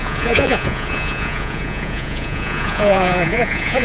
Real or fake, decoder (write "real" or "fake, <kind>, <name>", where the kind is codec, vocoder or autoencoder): fake, vocoder, Vocos